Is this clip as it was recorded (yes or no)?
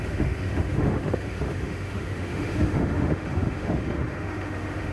no